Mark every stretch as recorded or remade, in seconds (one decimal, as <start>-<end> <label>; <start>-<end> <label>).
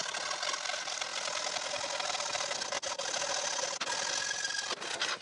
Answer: 0.0-5.2 recorded